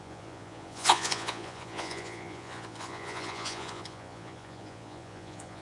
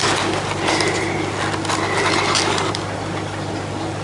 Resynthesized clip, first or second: first